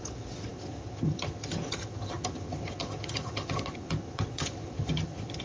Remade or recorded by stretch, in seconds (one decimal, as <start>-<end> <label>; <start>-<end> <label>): 0.0-5.4 remade